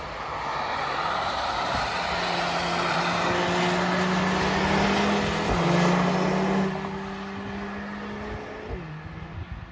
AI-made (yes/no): no